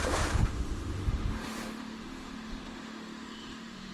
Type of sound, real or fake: fake